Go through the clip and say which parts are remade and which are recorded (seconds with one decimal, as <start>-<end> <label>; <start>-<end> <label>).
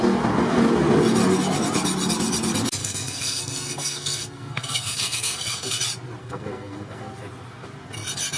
0.0-2.8 recorded; 2.8-5.8 remade; 5.8-6.2 recorded; 6.2-7.1 remade; 7.1-8.4 recorded